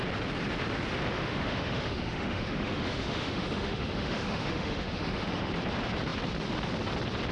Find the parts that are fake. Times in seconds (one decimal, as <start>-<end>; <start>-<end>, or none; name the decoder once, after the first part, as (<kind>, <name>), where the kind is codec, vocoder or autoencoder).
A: 1.1-5.5 (autoencoder, DAC-VAE)